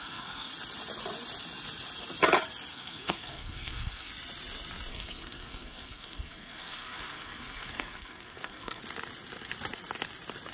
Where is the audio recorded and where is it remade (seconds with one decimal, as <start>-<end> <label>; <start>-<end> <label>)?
0.0-0.5 remade; 0.5-2.7 recorded; 2.7-4.1 remade; 4.1-4.9 recorded; 4.9-8.8 remade; 8.8-10.5 recorded

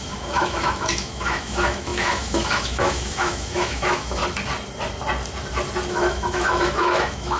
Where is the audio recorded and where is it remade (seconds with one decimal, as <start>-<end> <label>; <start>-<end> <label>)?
0.0-4.2 remade; 4.2-5.9 recorded; 5.9-7.4 remade

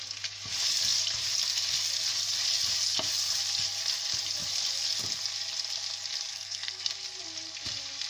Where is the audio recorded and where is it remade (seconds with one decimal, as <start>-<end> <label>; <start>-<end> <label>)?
0.0-6.3 recorded; 6.3-6.9 remade; 6.9-8.1 recorded

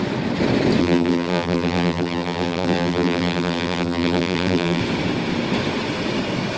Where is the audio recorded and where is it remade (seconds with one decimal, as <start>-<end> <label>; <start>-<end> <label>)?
0.0-0.8 recorded; 0.8-4.8 remade; 4.8-6.6 recorded

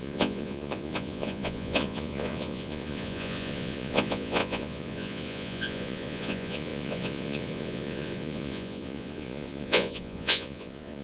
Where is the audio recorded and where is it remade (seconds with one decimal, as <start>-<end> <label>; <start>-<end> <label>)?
0.0-11.0 remade

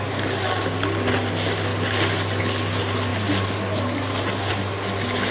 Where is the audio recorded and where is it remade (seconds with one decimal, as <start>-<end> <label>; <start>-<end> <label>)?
0.0-5.3 recorded